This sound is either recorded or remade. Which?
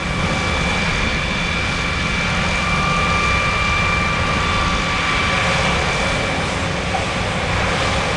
recorded